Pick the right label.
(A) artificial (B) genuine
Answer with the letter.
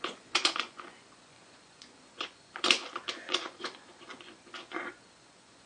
A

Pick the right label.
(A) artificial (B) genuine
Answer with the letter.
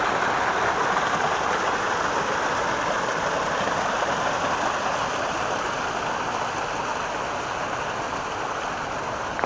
B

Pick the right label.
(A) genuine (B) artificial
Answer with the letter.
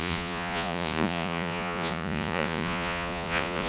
B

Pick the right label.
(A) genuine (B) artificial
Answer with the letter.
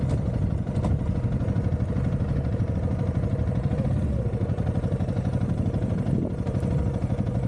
A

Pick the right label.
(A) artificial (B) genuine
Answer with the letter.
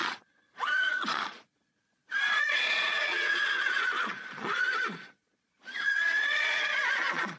A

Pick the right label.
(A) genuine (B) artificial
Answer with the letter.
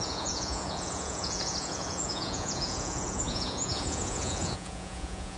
B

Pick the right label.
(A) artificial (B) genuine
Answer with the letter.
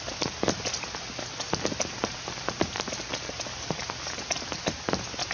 B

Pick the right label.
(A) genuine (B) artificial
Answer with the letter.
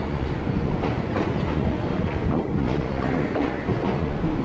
B